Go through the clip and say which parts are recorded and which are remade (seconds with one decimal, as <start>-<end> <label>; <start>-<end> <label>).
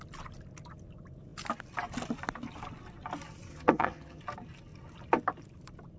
0.0-3.5 recorded; 3.5-4.2 remade; 4.2-6.0 recorded